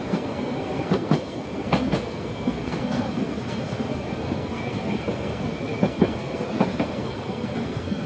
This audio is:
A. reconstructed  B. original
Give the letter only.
A